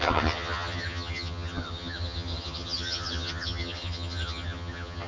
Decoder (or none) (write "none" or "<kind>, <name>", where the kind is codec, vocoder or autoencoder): vocoder, HiFi-GAN